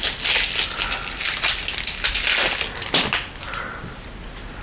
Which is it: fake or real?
real